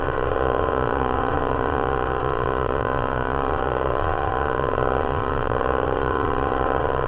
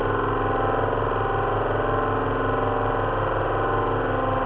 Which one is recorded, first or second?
second